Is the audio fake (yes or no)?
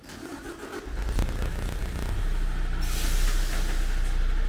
no